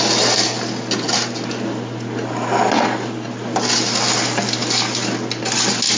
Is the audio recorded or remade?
recorded